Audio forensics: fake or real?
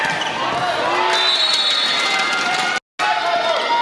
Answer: real